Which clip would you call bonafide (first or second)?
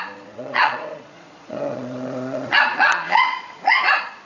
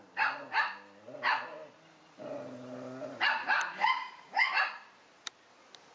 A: second